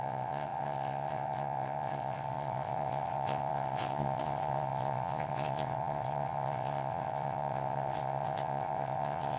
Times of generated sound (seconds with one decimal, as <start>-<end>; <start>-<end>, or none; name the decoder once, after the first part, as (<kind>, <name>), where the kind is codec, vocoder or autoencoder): 0.0-9.4 (vocoder, WaveNeXt)